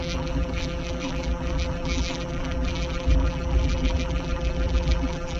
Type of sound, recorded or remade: remade